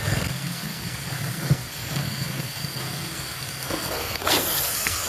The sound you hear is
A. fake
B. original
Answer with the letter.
A